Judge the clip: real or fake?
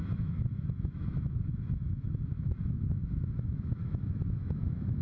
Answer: fake